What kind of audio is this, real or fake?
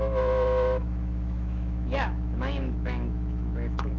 fake